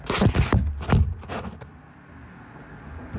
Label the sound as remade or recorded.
recorded